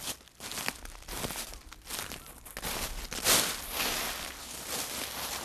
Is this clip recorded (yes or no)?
yes